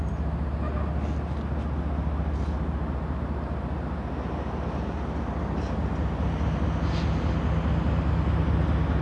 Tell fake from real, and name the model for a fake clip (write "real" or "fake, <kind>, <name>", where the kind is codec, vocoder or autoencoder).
real